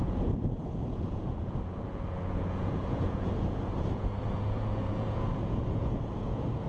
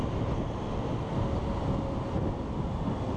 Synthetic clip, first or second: first